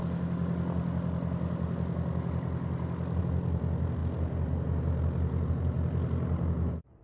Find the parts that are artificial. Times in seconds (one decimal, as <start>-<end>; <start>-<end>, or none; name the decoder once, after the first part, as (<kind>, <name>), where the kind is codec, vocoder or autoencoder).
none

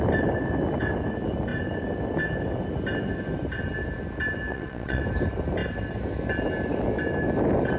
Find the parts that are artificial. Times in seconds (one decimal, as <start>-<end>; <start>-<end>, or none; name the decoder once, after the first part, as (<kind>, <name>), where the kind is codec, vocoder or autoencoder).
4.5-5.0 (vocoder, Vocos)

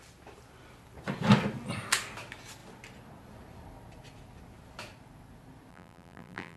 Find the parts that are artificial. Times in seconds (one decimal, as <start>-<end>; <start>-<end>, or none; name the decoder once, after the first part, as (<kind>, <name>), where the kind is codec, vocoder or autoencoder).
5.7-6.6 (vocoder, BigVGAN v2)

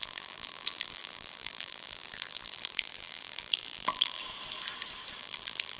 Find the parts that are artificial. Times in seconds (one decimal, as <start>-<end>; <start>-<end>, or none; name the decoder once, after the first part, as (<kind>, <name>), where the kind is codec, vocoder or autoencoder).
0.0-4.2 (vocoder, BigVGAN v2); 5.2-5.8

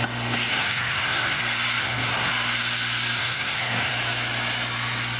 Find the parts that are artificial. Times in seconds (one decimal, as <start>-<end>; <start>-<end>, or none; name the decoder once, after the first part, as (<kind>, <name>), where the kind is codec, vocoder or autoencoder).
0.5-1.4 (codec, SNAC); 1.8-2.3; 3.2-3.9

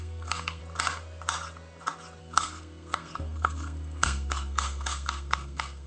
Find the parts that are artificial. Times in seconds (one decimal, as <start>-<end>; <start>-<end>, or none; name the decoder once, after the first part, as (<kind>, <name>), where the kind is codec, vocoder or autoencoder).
0.0-0.6 (codec, SNAC); 2.2-5.9

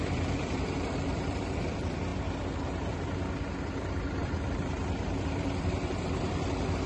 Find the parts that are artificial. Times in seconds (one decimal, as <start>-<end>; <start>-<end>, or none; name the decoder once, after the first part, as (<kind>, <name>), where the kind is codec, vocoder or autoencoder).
0.0-2.1 (vocoder, BigVGAN v2); 3.6-6.9